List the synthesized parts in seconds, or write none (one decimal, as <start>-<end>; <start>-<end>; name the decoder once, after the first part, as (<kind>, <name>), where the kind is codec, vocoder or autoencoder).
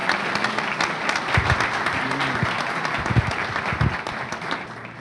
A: none